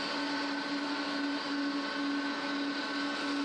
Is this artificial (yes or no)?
no